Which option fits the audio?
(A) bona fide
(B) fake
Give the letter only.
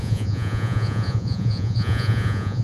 B